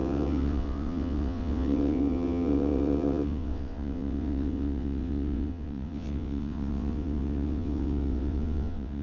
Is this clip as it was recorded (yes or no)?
no